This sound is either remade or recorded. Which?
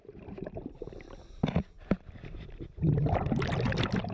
remade